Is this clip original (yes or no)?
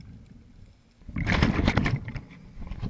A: yes